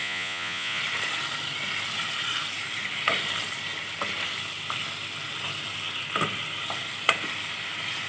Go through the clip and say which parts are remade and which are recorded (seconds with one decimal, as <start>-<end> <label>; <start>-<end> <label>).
0.0-0.8 remade; 0.8-8.1 recorded